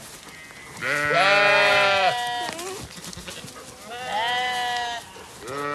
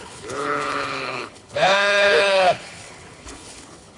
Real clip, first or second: first